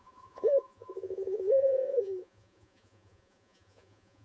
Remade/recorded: remade